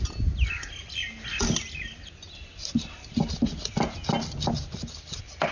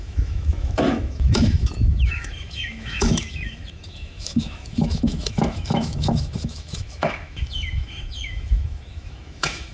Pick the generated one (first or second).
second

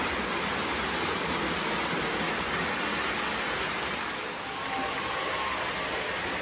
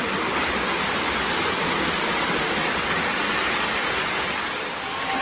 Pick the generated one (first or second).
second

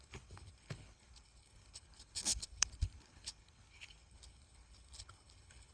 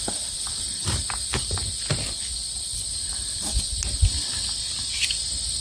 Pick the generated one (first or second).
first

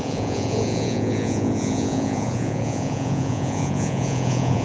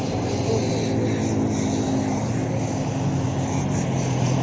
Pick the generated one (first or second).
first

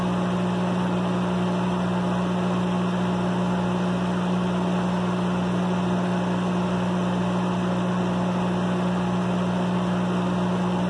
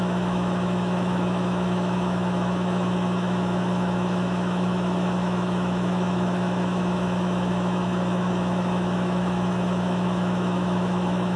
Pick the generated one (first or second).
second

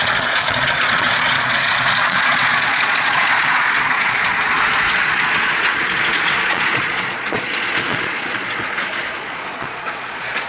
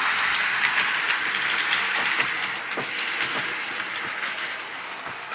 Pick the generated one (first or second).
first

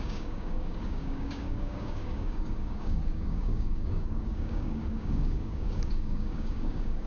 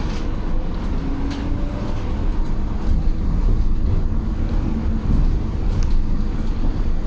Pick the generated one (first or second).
first